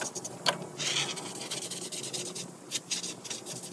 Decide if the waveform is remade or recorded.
recorded